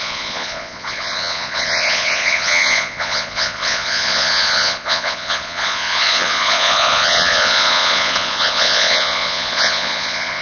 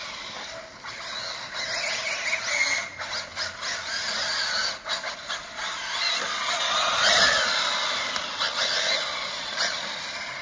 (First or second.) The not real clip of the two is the first